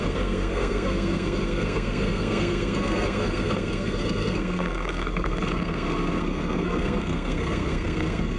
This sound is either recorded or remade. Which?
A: remade